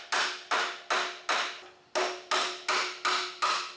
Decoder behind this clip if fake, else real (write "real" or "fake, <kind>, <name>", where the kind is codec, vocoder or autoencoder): real